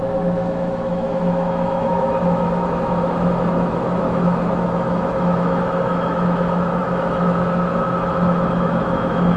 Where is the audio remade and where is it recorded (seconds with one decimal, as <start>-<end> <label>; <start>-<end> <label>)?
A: 0.0-9.4 remade